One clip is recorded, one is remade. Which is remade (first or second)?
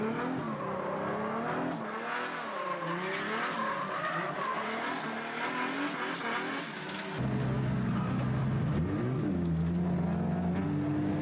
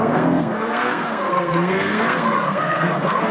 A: second